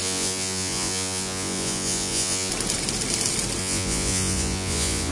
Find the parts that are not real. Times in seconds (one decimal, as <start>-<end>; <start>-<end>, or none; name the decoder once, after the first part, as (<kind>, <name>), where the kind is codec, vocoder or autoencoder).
0.0-2.5 (vocoder, Vocos); 3.6-5.1